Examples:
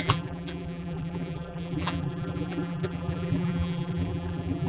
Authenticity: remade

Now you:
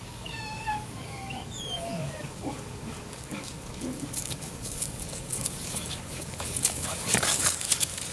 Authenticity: remade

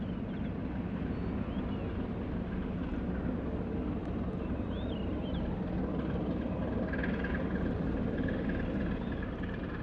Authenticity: recorded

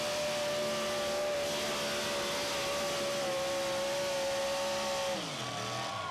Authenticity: recorded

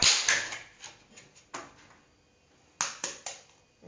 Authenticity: recorded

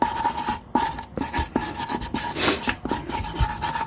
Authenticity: recorded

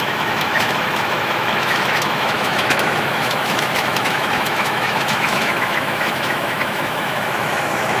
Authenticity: remade